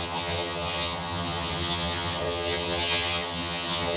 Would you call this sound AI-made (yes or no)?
yes